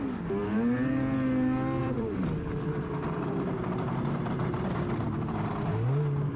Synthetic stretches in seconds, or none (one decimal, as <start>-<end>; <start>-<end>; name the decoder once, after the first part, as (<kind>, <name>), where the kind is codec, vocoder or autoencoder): 0.4-1.0 (vocoder, BigVGAN v2); 1.8-5.6